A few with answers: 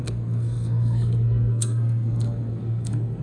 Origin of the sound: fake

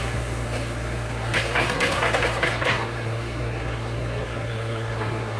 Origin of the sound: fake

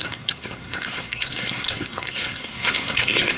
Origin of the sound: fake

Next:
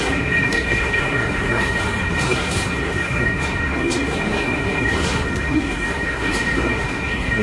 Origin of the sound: fake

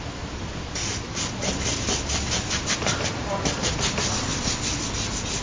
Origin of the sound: real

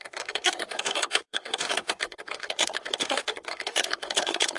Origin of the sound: fake